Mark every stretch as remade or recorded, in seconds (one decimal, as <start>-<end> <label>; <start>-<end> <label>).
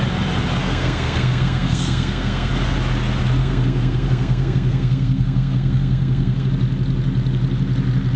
0.0-0.6 recorded; 0.6-2.5 remade; 2.5-3.4 recorded; 3.4-6.5 remade; 6.5-8.2 recorded